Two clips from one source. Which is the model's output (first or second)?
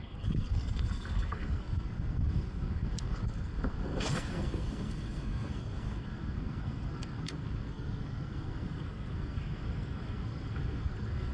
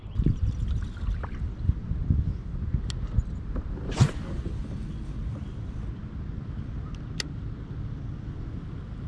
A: first